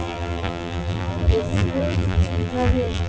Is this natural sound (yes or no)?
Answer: no